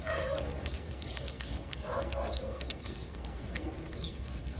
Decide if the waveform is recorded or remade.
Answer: remade